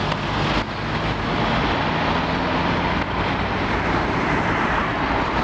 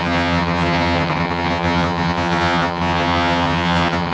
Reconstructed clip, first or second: second